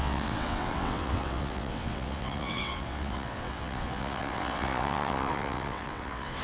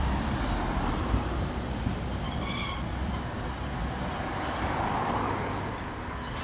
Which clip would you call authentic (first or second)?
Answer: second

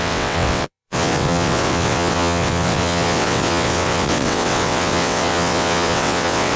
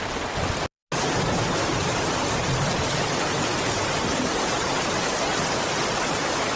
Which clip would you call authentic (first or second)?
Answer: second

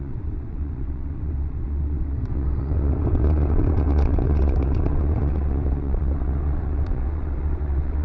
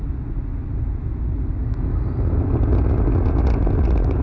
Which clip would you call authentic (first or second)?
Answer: second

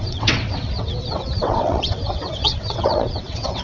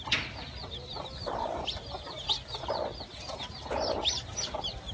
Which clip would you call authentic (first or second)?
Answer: second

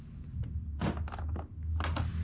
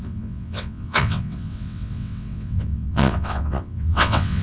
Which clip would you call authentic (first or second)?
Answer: first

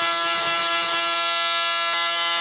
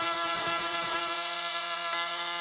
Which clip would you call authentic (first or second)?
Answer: first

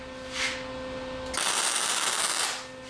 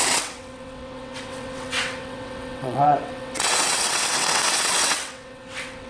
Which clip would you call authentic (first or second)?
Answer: first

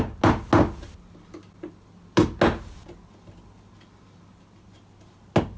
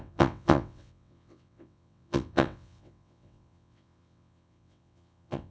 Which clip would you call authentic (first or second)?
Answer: first